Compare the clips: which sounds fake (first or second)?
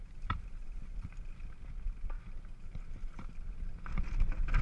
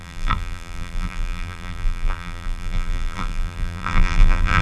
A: second